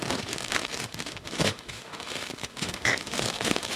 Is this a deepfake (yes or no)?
yes